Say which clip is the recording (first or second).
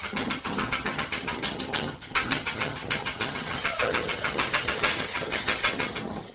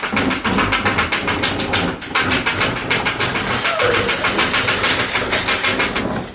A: second